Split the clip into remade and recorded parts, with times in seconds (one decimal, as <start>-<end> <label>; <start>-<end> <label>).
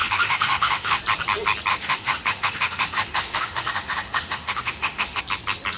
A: 0.0-1.0 remade; 1.0-1.7 recorded; 1.7-5.2 remade; 5.2-5.8 recorded